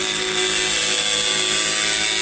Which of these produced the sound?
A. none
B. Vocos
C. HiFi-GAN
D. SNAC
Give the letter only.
A